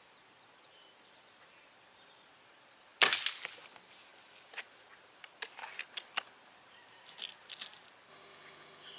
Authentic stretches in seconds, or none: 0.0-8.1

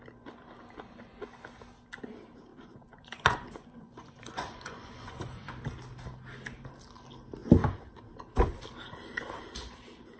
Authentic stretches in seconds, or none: 0.0-2.5; 5.5-10.2

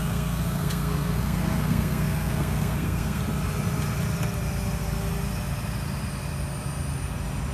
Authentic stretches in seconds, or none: 3.2-7.5